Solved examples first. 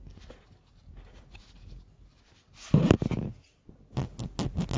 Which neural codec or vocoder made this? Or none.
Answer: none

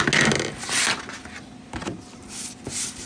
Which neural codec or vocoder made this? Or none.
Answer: none